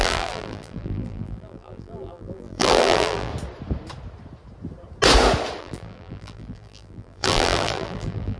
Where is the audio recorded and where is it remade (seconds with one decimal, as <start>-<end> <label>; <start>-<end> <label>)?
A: 0.0-3.3 remade; 3.3-5.6 recorded; 5.6-8.4 remade